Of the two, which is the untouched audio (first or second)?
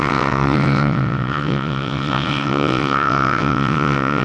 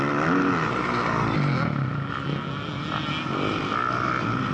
second